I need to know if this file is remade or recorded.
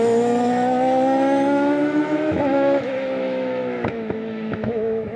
remade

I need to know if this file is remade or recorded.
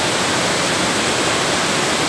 recorded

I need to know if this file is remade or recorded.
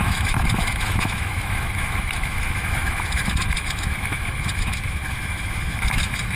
remade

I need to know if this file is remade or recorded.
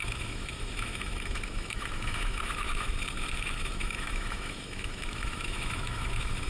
remade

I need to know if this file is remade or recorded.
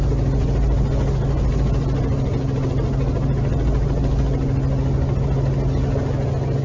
recorded